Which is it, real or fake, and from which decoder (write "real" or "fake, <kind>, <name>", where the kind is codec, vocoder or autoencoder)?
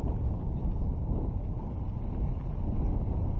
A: real